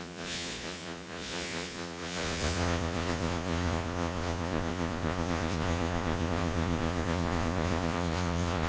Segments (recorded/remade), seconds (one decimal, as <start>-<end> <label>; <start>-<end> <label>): 0.0-8.7 remade